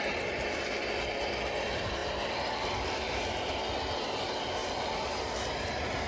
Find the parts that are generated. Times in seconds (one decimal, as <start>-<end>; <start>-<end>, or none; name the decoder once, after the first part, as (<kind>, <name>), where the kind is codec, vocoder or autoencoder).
none

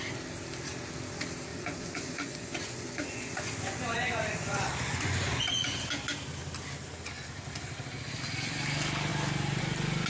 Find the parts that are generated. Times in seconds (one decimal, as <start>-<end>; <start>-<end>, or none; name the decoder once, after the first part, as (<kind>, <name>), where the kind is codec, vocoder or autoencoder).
1.5-5.9 (vocoder, Vocos)

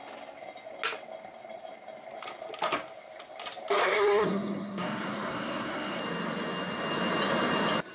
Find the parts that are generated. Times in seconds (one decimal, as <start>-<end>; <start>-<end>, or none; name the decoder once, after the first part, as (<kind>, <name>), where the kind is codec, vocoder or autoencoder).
3.8-6.0 (codec, SNAC)

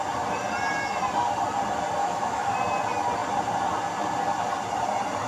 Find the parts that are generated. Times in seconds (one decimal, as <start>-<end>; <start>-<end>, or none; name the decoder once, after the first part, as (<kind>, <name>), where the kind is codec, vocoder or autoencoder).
2.0-2.5 (autoencoder, DAC-VAE)

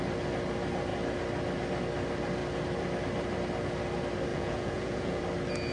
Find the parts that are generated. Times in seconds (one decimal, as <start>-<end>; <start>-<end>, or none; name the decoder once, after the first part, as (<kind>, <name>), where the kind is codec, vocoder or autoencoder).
4.3-5.2 (vocoder, Vocos)

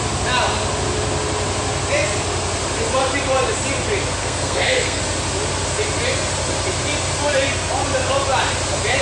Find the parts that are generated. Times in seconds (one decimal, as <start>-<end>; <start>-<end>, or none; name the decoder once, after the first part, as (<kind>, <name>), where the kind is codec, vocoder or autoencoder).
4.2-5.0 (codec, SNAC)